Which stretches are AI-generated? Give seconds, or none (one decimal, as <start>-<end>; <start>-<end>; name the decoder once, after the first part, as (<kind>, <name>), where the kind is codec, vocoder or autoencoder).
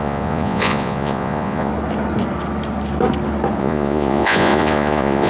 0.0-1.7 (vocoder, Vocos); 3.6-5.3